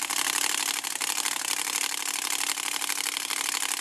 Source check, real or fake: real